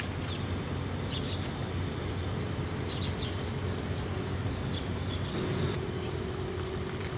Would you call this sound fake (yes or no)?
no